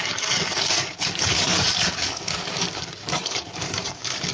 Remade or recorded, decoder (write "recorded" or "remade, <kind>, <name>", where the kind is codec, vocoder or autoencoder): remade, codec, DAC